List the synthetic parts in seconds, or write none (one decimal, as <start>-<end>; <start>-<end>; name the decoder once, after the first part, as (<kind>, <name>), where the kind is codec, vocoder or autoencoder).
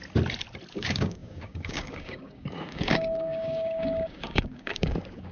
0.7-5.3 (codec, DAC)